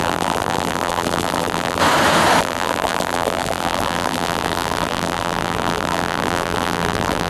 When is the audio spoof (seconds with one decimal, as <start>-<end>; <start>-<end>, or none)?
0.0-1.8; 2.4-7.3